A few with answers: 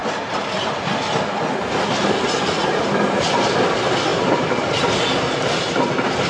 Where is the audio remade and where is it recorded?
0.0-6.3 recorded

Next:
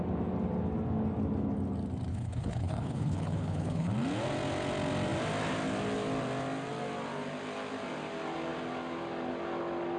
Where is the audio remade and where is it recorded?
0.0-2.1 recorded; 2.1-3.9 remade; 3.9-10.0 recorded

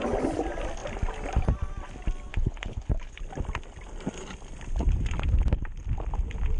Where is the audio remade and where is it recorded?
0.0-2.3 recorded; 2.3-3.2 remade; 3.2-6.6 recorded

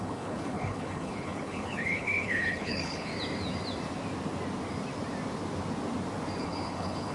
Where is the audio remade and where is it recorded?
0.0-3.1 remade; 3.1-6.4 recorded; 6.4-7.1 remade

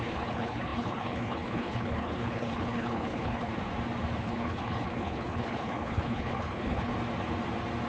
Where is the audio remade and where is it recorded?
0.0-3.5 remade; 3.5-4.2 recorded; 4.2-6.9 remade; 6.9-7.9 recorded